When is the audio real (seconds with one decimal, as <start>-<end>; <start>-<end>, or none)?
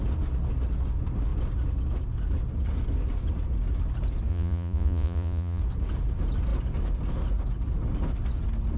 0.0-4.3; 5.6-8.8